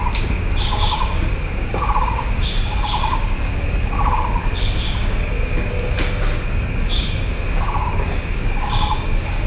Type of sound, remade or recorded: remade